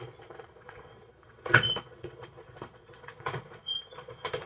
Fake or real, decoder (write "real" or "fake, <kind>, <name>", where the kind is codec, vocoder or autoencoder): fake, vocoder, Vocos